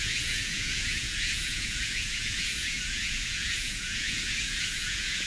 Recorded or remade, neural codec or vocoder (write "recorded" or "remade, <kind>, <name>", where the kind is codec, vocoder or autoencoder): remade, vocoder, Vocos